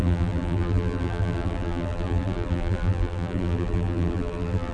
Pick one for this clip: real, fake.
fake